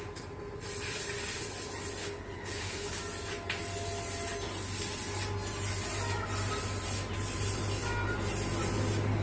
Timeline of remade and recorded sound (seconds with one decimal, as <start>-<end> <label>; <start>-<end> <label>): 0.0-2.0 recorded; 2.0-3.0 remade; 3.0-9.2 recorded